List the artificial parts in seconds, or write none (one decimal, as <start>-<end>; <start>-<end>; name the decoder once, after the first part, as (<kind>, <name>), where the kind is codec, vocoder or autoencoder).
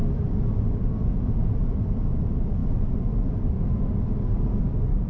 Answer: none